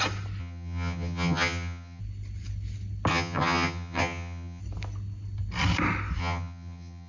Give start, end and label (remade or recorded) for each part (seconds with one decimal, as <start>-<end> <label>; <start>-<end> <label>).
0.0-0.4 recorded; 0.4-2.0 remade; 2.0-3.1 recorded; 3.1-4.6 remade; 4.6-6.2 recorded; 6.2-7.1 remade